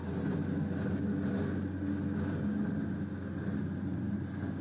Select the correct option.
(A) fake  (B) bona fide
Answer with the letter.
B